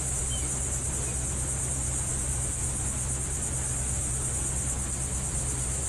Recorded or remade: recorded